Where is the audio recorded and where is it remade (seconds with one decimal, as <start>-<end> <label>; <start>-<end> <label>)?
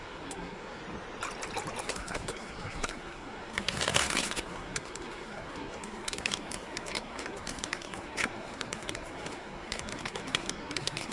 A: 0.0-0.8 remade; 0.8-1.8 recorded; 1.8-11.1 remade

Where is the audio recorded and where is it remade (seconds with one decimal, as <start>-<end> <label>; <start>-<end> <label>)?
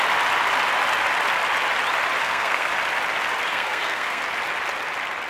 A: 0.0-2.2 recorded; 2.2-2.7 remade; 2.7-3.5 recorded; 3.5-4.2 remade; 4.2-5.3 recorded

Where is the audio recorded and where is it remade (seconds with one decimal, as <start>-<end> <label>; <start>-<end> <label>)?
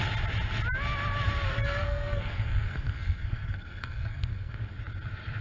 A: 0.0-1.5 recorded; 1.5-4.7 remade; 4.7-5.4 recorded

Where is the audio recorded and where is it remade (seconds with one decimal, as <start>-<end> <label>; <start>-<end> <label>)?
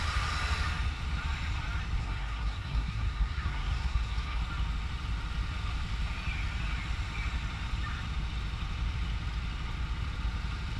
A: 0.0-2.0 recorded; 2.0-4.4 remade; 4.4-10.8 recorded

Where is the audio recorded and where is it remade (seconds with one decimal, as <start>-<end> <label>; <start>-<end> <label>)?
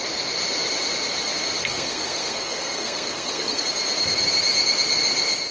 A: 0.0-1.6 recorded; 1.6-3.6 remade; 3.6-5.5 recorded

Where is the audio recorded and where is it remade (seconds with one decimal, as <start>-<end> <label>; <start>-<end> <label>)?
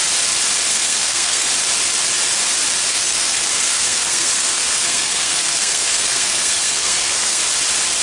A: 0.0-0.7 recorded; 0.7-1.5 remade; 1.5-2.9 recorded; 2.9-7.4 remade; 7.4-8.0 recorded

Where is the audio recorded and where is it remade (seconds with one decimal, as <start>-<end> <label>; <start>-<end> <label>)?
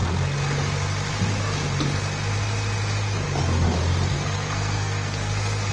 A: 0.0-4.1 recorded; 4.1-5.7 remade